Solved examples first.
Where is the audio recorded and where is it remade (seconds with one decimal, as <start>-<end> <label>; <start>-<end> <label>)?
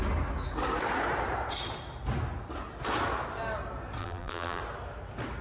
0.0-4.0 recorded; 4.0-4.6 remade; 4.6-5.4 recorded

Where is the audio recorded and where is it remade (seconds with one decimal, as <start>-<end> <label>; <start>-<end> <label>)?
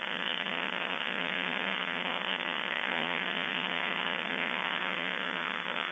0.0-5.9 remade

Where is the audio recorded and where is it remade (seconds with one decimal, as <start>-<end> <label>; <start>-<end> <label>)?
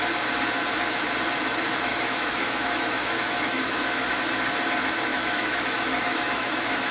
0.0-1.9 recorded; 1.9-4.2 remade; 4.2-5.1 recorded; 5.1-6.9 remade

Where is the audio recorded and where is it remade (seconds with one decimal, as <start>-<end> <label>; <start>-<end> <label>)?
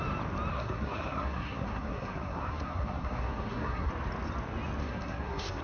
0.0-0.5 recorded; 0.5-3.9 remade; 3.9-4.8 recorded; 4.8-5.6 remade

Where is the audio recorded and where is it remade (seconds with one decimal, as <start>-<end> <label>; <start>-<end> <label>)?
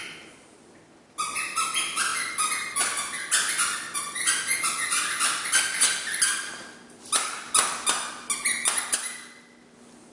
0.0-10.1 recorded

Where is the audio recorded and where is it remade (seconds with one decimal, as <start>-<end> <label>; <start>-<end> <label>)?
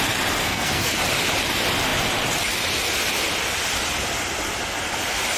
0.0-0.4 recorded; 0.4-1.0 remade; 1.0-5.4 recorded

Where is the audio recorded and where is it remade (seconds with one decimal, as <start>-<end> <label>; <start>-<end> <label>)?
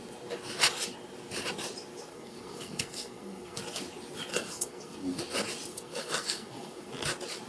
0.0-2.1 recorded; 2.1-3.6 remade; 3.6-4.3 recorded; 4.3-5.2 remade; 5.2-5.7 recorded; 5.7-6.9 remade; 6.9-7.5 recorded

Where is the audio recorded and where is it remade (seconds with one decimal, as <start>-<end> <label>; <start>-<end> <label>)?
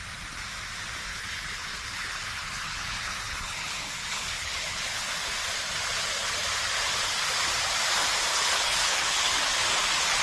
0.0-1.1 recorded; 1.1-5.1 remade; 5.1-8.3 recorded; 8.3-9.3 remade; 9.3-10.2 recorded